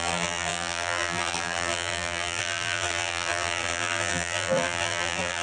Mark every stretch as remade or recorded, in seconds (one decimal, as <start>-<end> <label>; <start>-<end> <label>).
0.0-5.4 remade